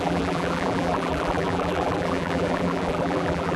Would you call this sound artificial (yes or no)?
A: yes